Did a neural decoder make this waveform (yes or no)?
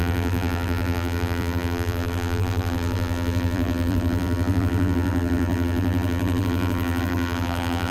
yes